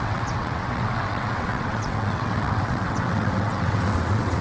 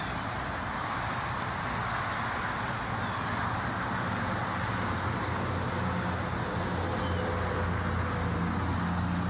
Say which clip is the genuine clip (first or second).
second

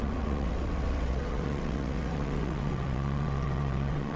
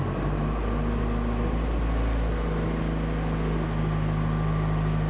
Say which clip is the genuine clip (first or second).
second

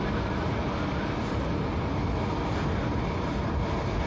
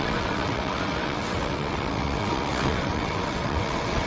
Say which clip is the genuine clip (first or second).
first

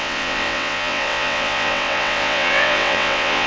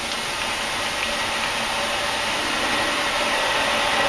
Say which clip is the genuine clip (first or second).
second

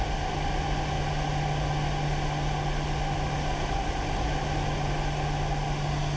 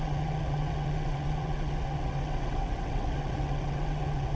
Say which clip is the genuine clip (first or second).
first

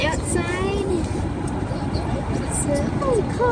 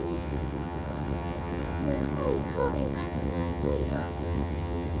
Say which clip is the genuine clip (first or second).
first